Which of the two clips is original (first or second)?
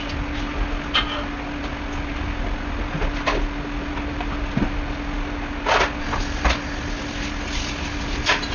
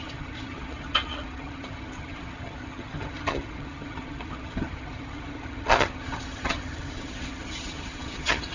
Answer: first